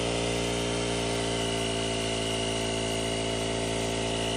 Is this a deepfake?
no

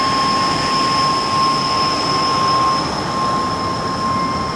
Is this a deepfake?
no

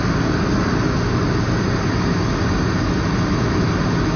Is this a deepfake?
no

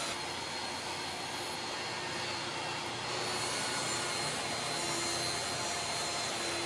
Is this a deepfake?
no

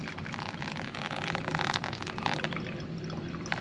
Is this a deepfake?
no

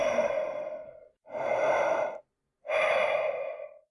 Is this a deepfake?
no